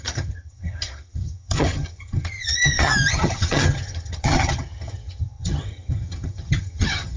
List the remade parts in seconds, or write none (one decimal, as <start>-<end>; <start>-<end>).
0.0-7.2